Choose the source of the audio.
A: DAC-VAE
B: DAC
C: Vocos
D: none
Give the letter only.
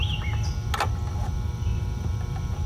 D